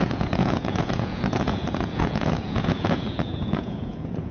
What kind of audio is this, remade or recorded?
remade